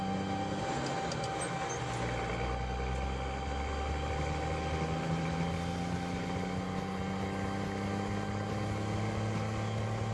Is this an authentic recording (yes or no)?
yes